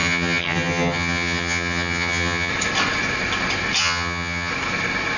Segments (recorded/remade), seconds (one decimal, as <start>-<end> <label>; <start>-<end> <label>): 0.0-2.5 remade; 2.5-3.8 recorded; 3.8-4.5 remade; 4.5-5.2 recorded